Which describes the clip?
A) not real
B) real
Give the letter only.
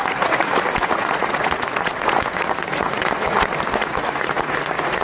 A